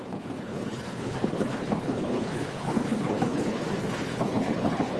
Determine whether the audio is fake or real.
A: fake